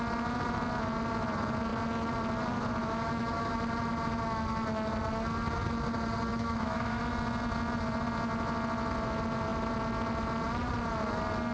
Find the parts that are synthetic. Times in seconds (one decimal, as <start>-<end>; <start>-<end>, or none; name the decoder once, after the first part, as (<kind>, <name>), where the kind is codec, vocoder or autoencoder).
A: 2.8-3.5 (autoencoder, DAC-VAE); 6.3-7.0